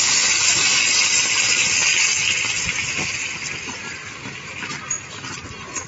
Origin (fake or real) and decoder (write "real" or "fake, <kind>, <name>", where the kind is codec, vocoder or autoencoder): fake, vocoder, BigVGAN v2